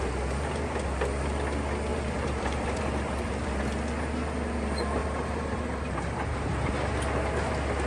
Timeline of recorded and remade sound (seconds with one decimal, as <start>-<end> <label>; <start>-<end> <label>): 0.0-1.9 recorded; 1.9-3.6 remade; 3.6-5.0 recorded; 5.0-6.7 remade; 6.7-7.9 recorded